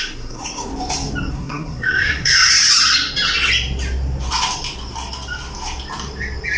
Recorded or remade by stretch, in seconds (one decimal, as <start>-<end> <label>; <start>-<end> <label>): 0.0-0.7 remade; 0.7-1.3 recorded; 1.3-2.5 remade; 2.5-6.6 recorded